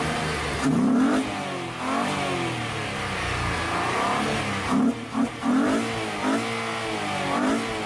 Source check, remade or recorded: recorded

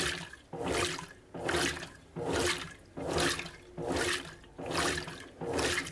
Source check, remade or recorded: recorded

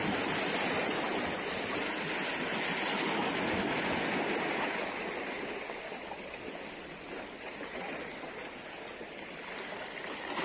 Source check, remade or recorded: recorded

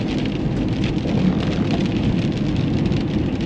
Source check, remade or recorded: recorded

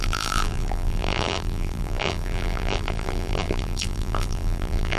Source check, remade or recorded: remade